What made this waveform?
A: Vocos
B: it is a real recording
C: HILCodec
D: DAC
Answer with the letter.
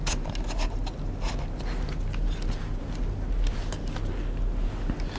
B